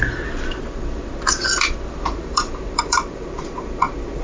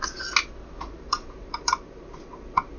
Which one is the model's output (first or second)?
first